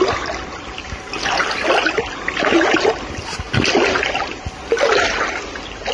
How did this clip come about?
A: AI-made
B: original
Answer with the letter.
B